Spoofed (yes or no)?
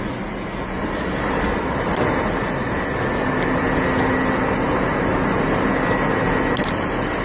no